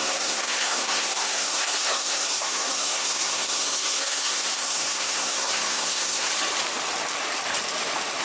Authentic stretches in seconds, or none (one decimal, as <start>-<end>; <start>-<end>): 6.3-8.2